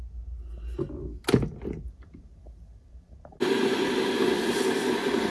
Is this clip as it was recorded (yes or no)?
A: yes